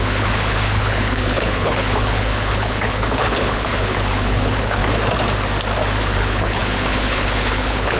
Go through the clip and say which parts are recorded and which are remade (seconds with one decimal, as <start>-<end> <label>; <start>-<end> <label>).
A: 0.0-4.8 remade; 4.8-6.0 recorded; 6.0-8.0 remade